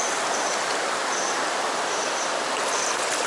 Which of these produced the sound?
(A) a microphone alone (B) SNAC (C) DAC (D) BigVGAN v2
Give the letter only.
D